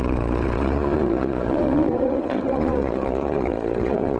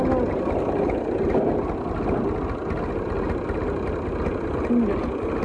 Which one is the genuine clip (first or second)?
second